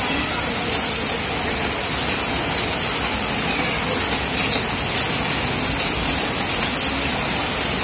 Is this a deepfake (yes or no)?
no